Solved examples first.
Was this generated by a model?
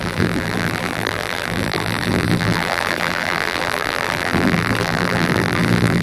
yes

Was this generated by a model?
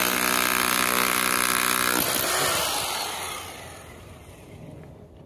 no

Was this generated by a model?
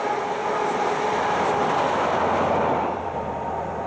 no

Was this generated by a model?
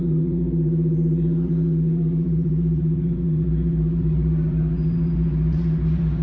yes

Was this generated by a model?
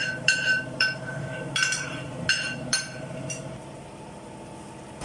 yes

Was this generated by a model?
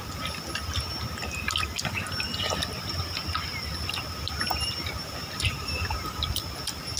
no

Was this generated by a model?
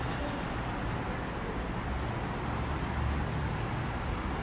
no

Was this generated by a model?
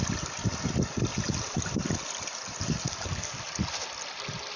no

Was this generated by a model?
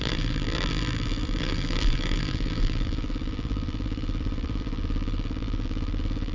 yes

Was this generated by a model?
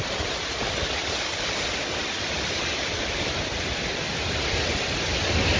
no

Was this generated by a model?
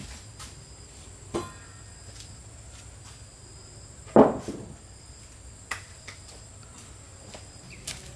no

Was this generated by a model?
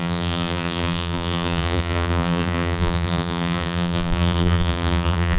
yes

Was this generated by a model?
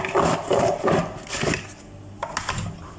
no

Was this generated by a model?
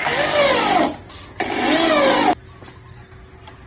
no